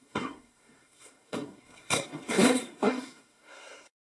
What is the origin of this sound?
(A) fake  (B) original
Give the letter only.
A